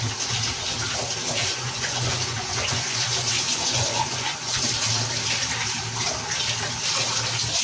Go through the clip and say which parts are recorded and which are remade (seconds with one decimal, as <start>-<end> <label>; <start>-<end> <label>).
0.0-1.4 recorded; 1.4-4.6 remade; 4.6-7.6 recorded